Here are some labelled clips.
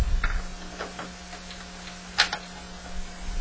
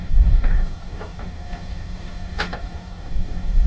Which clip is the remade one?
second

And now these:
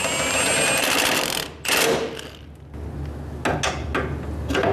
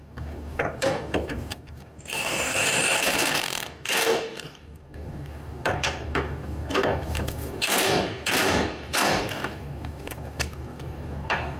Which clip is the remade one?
second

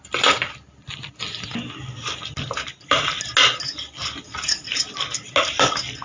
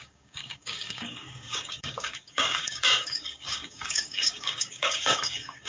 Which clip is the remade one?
second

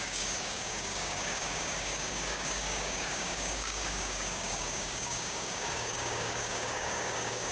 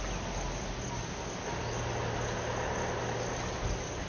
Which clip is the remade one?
first